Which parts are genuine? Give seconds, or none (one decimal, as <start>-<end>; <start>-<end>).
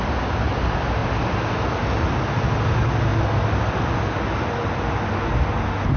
0.0-6.0